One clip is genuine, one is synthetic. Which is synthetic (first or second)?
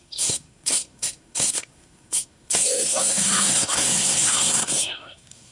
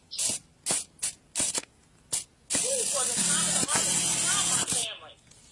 first